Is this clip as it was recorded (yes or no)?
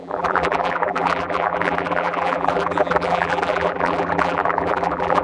no